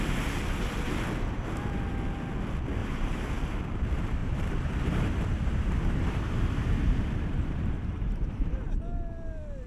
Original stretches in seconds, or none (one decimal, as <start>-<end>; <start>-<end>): 0.0-2.8; 3.3-4.2; 8.7-9.7